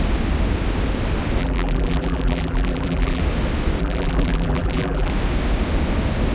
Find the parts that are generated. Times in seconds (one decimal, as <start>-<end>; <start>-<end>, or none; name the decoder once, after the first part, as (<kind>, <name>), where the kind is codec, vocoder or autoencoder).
1.4-3.2 (vocoder, BigVGAN v2); 3.8-5.1